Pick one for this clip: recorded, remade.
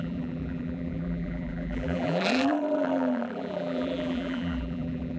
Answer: remade